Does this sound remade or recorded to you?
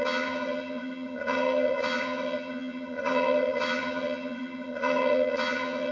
remade